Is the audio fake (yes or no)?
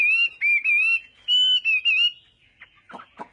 no